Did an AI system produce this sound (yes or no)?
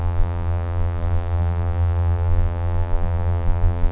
yes